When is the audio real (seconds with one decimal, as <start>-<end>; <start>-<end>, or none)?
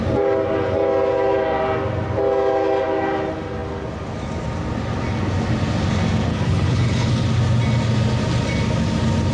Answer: 0.0-6.3; 7.1-9.3